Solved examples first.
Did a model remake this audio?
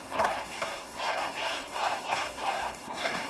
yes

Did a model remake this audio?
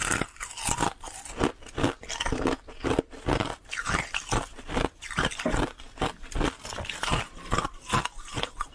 no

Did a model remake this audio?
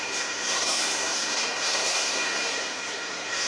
yes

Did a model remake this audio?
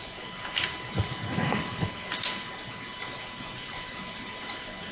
no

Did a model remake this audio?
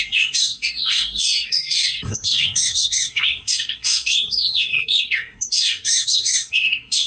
yes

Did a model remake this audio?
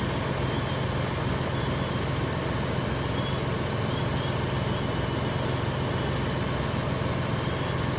no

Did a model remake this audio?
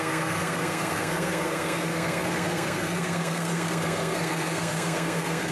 yes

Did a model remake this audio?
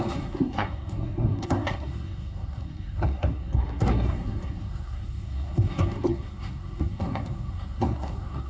yes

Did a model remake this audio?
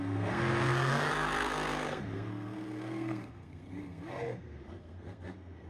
yes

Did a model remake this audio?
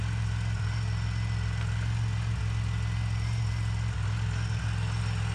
no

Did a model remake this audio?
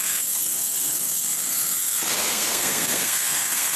yes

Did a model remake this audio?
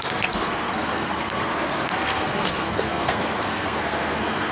yes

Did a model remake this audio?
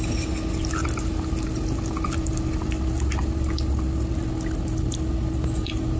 no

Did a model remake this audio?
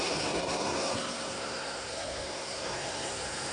yes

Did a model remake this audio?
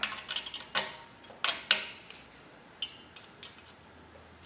no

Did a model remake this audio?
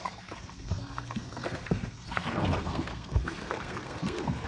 yes